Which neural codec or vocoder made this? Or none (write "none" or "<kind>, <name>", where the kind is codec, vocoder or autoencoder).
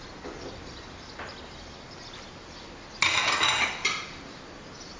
none